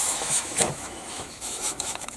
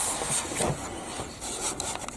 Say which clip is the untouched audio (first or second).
second